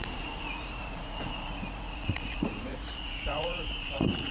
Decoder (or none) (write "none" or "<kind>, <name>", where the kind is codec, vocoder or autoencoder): vocoder, Vocos